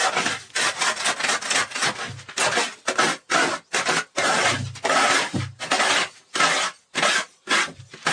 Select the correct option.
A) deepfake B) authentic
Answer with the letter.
B